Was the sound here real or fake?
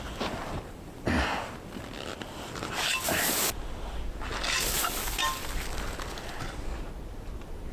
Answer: real